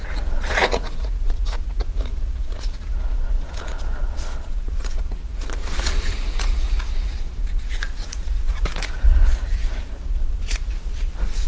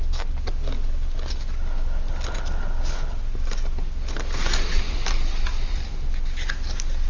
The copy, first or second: first